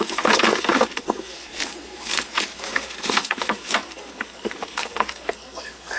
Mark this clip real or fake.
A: fake